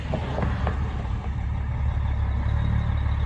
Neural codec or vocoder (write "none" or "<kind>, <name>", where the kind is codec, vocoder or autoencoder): none